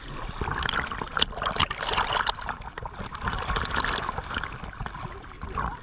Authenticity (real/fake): real